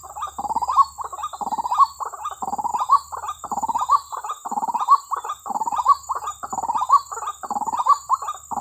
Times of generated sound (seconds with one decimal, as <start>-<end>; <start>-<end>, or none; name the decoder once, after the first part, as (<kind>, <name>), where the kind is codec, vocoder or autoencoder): 2.7-5.5 (vocoder, BigVGAN v2)